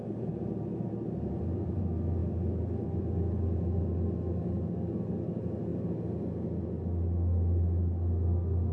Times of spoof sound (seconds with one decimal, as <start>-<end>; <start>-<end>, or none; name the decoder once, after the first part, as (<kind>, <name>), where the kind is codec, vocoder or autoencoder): 0.0-1.8 (vocoder, BigVGAN v2)